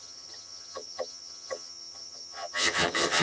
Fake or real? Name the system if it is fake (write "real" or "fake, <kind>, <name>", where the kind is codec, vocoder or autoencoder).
fake, vocoder, HiFi-GAN